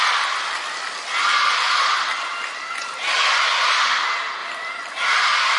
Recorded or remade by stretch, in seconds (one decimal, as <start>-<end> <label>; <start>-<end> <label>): 0.0-5.6 recorded